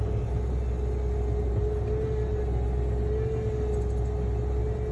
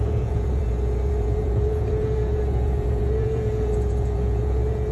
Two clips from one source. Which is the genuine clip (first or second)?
first